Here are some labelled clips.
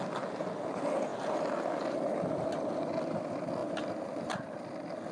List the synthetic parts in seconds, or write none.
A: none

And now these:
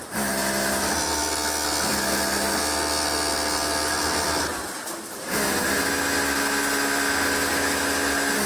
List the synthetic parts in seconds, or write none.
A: none

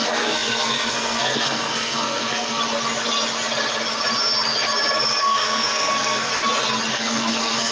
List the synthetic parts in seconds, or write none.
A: 0.0-2.6 (codec, SNAC); 5.2-6.3; 6.9-7.7